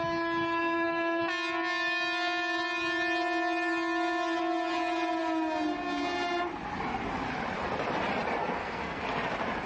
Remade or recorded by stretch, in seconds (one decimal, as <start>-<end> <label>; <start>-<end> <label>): 0.0-0.6 recorded; 0.6-1.2 remade; 1.2-8.4 recorded; 8.4-9.0 remade; 9.0-9.7 recorded